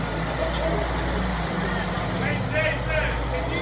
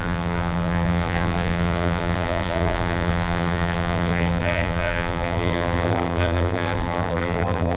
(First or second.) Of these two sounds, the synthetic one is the second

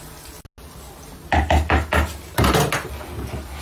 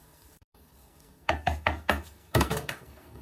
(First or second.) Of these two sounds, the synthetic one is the second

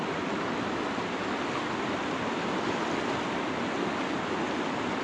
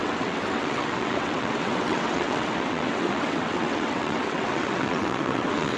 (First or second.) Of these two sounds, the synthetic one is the second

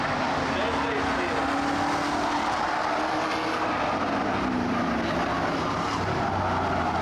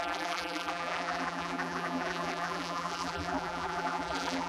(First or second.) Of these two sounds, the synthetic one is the second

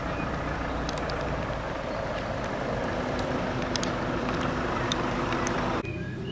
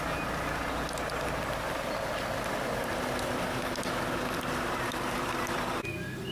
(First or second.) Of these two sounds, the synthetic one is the first